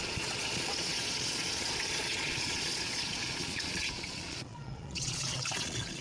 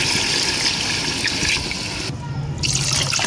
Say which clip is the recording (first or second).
second